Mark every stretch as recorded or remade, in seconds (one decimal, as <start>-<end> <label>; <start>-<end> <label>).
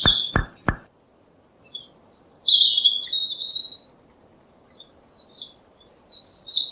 0.0-6.7 recorded